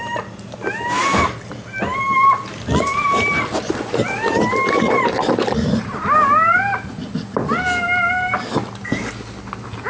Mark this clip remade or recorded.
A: recorded